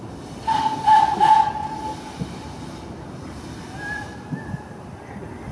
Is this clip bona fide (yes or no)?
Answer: yes